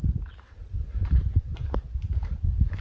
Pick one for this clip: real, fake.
fake